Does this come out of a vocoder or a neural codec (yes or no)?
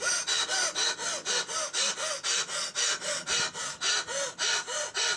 no